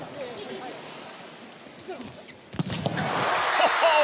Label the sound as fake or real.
real